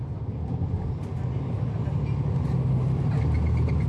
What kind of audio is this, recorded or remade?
recorded